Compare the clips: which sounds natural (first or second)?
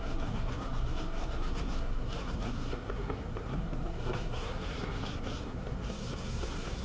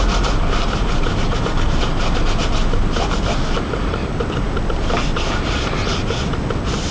second